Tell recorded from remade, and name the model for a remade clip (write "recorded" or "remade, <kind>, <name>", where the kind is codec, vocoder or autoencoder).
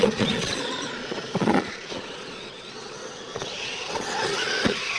remade, vocoder, Vocos